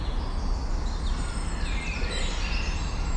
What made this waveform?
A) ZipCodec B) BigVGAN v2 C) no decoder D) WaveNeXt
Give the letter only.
C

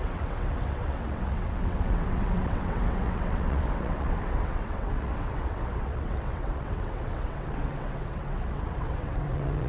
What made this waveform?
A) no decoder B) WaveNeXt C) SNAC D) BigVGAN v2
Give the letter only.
B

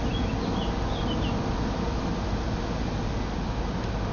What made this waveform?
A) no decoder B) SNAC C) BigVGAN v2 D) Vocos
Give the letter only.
A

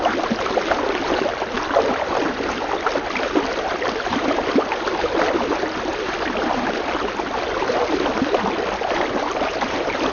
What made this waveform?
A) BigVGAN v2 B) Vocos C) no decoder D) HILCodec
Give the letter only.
C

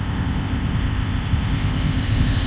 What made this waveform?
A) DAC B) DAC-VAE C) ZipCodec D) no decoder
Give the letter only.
C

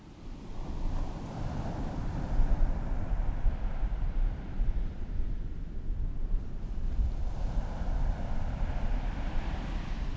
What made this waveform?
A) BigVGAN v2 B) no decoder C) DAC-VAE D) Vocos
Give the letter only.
B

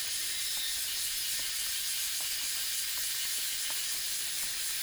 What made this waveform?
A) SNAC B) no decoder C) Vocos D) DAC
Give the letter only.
B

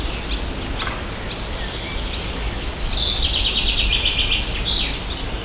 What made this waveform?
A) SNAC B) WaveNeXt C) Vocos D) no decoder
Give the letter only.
D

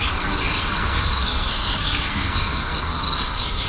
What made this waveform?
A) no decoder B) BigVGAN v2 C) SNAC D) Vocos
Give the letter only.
C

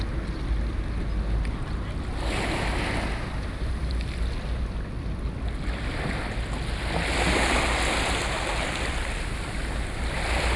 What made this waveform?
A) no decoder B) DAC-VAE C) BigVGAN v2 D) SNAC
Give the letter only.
A